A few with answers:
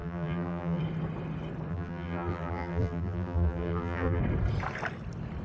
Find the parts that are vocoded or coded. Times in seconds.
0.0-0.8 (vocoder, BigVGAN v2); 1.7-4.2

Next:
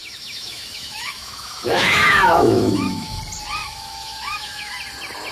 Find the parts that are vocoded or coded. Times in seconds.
0.0-3.2 (autoencoder, DAC-VAE); 3.6-4.7